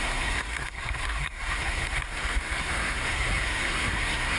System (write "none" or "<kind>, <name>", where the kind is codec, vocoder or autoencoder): codec, SNAC